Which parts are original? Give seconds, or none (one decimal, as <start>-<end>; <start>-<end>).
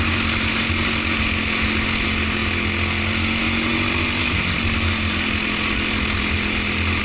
0.0-7.0